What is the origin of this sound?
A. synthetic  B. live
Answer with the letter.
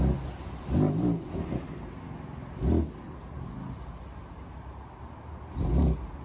B